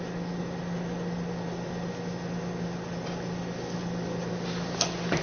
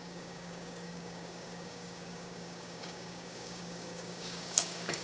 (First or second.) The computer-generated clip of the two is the second